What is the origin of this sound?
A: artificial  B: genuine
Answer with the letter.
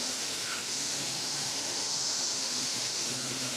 A